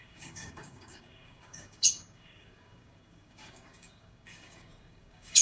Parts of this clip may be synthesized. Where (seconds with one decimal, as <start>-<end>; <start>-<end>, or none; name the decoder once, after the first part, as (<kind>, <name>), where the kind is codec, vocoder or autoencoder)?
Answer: 0.0-5.4 (codec, DAC)